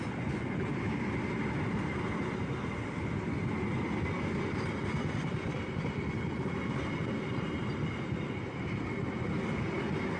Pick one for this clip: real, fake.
real